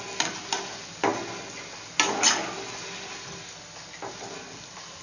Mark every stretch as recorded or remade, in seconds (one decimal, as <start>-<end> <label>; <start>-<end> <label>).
0.0-5.0 recorded